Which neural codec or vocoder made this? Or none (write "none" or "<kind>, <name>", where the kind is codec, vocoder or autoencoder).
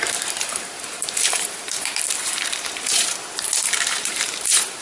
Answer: vocoder, BigVGAN v2